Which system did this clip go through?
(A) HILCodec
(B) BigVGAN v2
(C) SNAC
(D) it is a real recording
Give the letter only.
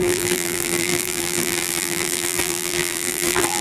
B